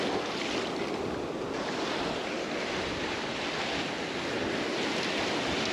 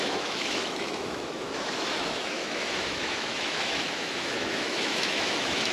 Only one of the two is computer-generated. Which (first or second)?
second